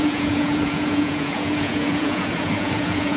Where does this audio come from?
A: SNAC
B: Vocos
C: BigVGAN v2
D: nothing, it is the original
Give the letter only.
B